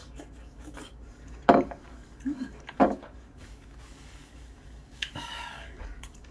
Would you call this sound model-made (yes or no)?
yes